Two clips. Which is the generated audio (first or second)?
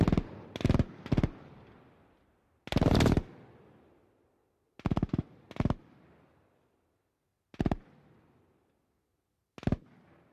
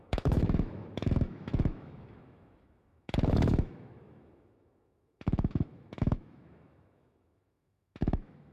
second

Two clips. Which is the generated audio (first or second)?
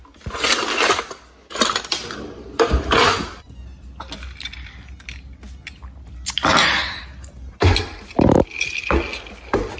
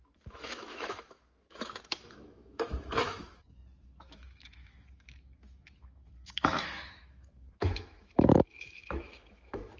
second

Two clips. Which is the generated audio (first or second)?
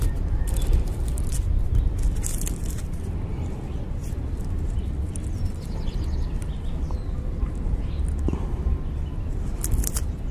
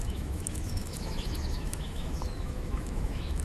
second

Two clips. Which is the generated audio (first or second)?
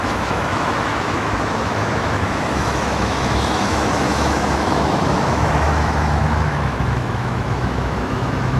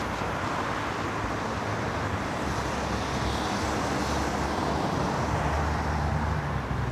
first